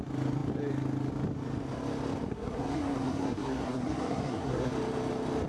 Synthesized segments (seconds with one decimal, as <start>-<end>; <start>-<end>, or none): 2.3-4.7